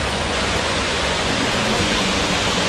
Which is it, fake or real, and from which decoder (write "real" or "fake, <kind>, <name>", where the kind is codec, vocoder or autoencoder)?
fake, vocoder, Vocos